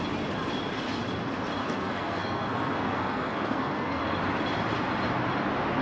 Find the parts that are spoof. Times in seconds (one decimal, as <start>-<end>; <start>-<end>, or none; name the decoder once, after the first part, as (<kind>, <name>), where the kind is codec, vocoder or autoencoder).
1.6-4.0 (codec, SNAC)